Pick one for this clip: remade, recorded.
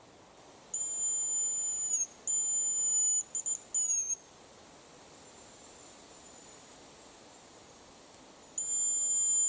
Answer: recorded